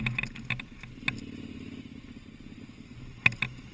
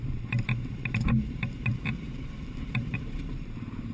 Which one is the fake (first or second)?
second